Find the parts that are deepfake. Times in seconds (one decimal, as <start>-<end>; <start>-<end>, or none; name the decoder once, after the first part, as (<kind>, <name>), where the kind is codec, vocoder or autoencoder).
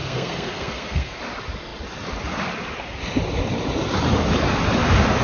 0.0-1.2 (codec, SNAC)